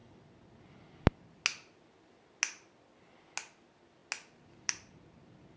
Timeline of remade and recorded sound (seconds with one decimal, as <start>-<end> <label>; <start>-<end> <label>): 0.0-5.6 recorded